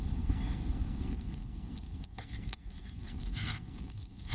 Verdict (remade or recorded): remade